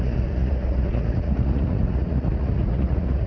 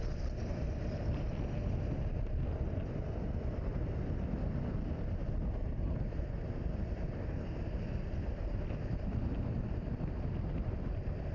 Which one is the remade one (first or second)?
first